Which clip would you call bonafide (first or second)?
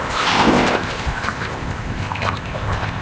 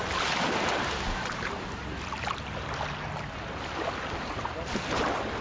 second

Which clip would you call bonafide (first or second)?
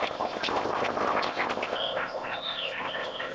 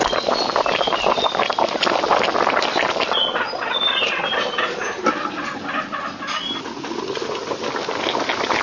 second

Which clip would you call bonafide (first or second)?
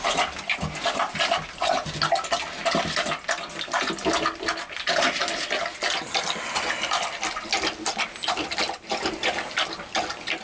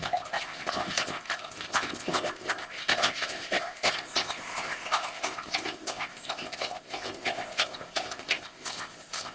first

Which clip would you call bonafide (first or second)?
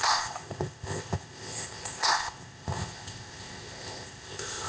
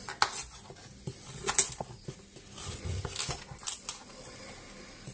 second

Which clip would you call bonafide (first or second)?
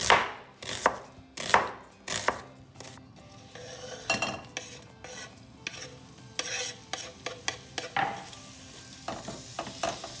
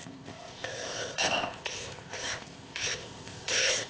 first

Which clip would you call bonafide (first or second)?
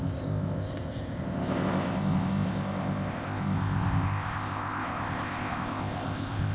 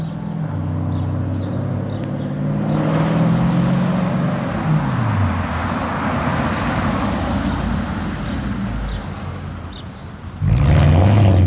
second